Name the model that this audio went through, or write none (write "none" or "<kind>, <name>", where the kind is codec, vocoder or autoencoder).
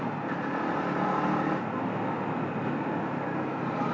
none